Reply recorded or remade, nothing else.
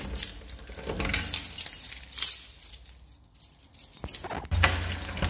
recorded